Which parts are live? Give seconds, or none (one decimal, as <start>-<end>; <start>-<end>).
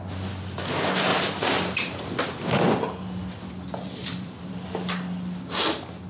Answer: 0.0-1.1; 2.0-4.0; 4.5-6.1